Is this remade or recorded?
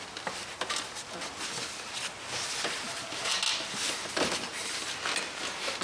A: recorded